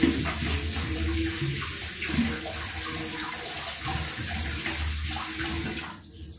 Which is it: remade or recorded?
recorded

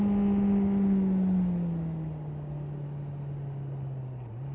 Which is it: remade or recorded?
recorded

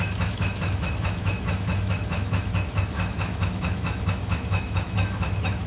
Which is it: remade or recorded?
remade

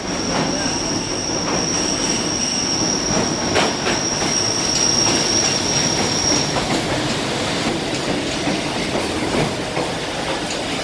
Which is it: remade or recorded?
recorded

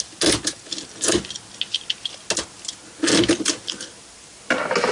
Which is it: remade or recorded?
recorded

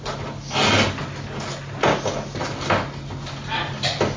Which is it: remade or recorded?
recorded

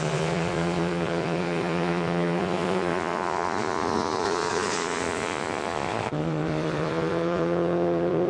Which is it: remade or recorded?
remade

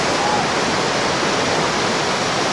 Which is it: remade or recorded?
recorded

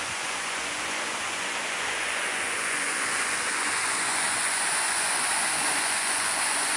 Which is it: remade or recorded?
remade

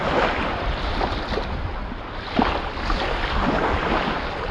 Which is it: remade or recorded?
recorded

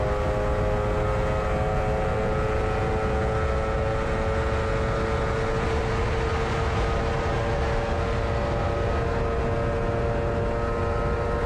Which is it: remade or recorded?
recorded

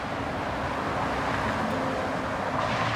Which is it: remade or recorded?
recorded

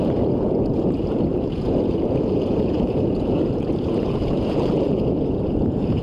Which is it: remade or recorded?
remade